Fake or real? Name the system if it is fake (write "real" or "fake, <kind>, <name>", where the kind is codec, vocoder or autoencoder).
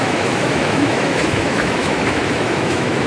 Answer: fake, autoencoder, DAC-VAE